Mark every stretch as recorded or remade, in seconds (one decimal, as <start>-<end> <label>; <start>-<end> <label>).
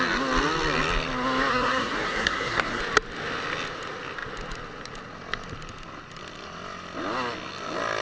0.0-1.5 recorded; 1.5-2.8 remade; 2.8-8.0 recorded